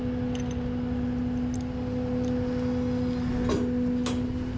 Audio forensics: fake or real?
real